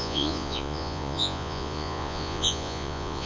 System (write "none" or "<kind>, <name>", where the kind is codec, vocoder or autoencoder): vocoder, Vocos